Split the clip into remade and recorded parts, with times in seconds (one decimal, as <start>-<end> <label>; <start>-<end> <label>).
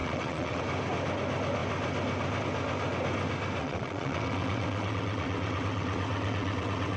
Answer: 0.0-0.6 remade; 0.6-3.6 recorded; 3.6-7.0 remade